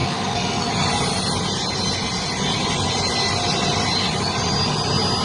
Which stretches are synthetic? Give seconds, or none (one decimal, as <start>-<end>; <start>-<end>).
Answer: 0.0-0.7